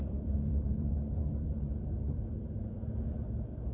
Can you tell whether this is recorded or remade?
remade